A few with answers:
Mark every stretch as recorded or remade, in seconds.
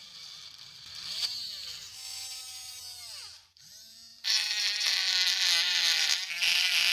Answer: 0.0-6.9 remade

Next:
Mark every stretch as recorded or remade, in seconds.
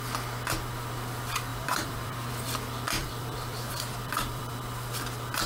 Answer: 0.0-1.5 recorded; 1.5-2.3 remade; 2.3-3.0 recorded; 3.0-4.6 remade; 4.6-5.5 recorded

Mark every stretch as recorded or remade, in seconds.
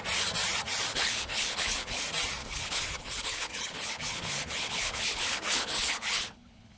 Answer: 0.0-0.9 recorded; 0.9-2.0 remade; 2.0-2.4 recorded; 2.4-6.8 remade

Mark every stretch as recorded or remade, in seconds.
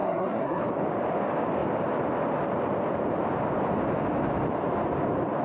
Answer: 0.0-0.6 remade; 0.6-5.4 recorded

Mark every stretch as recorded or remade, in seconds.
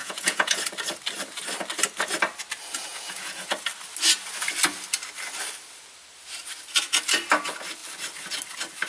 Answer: 0.0-0.6 remade; 0.6-2.9 recorded; 2.9-3.5 remade; 3.5-8.9 recorded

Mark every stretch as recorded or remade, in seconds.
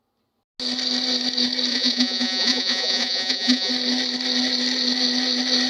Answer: 0.0-1.7 recorded; 1.7-3.7 remade; 3.7-5.7 recorded